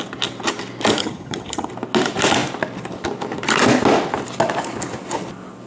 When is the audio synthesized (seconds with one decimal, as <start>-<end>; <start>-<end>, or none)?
1.0-1.7